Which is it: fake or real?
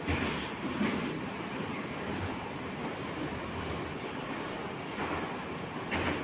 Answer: real